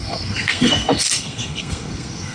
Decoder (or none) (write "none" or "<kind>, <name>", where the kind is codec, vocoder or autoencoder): codec, SNAC